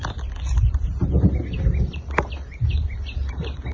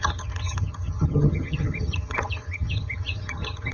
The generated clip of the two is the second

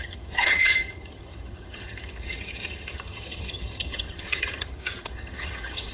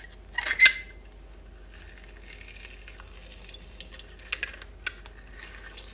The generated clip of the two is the first